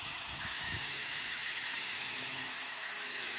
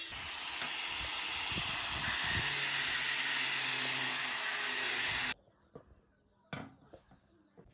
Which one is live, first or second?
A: second